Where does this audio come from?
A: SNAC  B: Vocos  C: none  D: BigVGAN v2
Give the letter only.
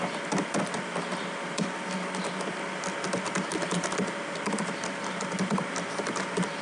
C